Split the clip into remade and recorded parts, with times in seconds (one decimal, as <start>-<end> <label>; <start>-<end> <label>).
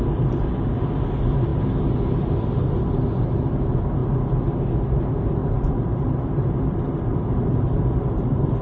0.0-5.4 recorded; 5.4-7.9 remade; 7.9-8.6 recorded